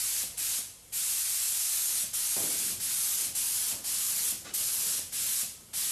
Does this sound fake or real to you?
real